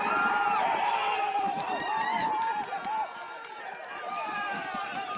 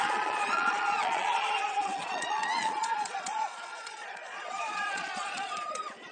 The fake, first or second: second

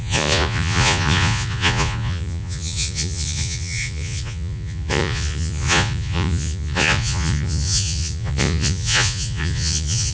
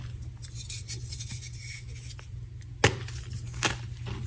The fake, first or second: first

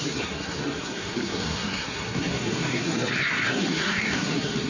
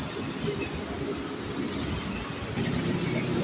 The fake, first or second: first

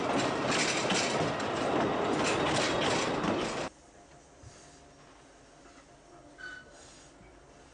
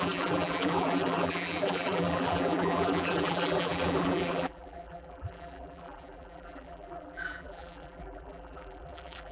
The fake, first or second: second